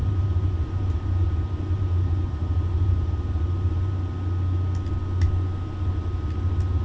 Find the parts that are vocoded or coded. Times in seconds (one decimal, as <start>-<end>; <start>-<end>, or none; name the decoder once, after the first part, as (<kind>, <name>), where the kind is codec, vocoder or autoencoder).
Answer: 0.0-4.1 (vocoder, BigVGAN v2)